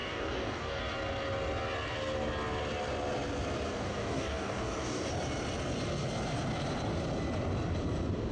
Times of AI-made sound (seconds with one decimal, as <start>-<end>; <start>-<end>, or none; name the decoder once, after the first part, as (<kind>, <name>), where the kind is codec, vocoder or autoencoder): 0.0-0.8 (codec, DAC); 3.7-5.1